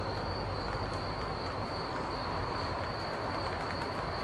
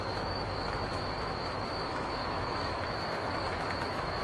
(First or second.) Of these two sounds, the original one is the first